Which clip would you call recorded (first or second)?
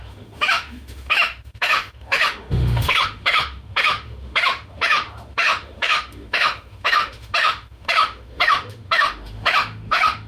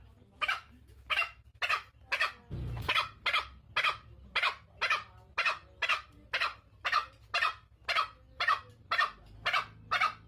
second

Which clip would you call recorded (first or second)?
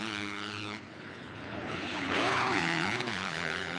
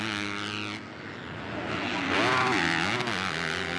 second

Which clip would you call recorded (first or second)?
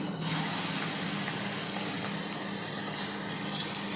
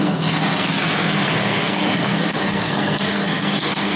first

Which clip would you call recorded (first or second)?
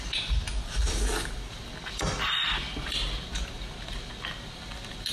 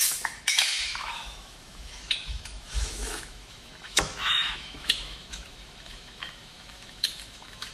first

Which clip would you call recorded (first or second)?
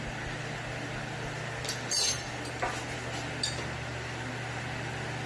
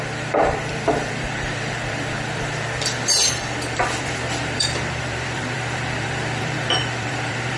first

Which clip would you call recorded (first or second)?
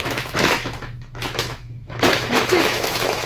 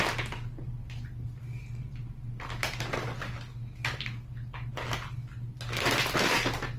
second